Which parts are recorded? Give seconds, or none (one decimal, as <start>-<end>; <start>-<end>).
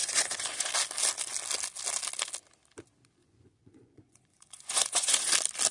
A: 0.7-3.2; 5.3-5.7